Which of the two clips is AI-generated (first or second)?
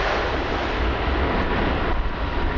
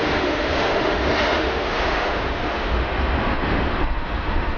second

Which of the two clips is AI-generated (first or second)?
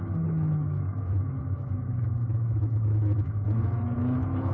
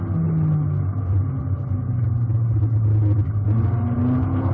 first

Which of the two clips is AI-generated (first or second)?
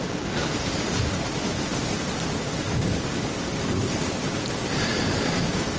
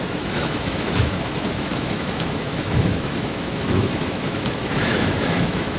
second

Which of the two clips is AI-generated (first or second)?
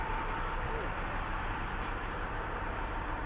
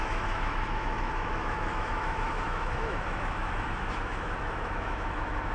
second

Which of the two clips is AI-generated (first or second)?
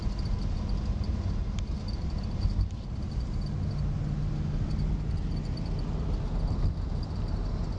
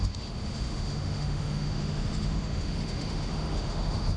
second